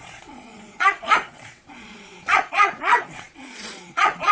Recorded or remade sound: remade